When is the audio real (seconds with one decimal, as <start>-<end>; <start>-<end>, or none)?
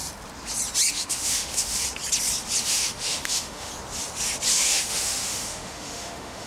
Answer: 0.0-0.9; 1.8-2.6; 3.7-4.5